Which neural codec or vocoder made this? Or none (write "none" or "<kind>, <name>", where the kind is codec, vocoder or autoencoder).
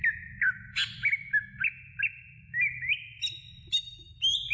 none